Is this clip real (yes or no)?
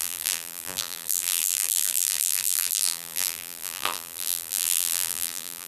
no